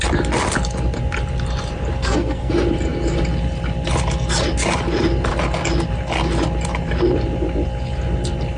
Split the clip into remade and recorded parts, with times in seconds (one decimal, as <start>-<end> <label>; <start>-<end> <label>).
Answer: 0.0-2.0 recorded; 2.0-2.5 remade; 2.5-8.6 recorded